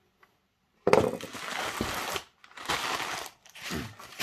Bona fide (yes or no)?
yes